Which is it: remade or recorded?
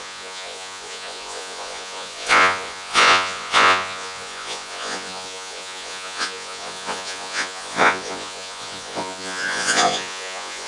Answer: remade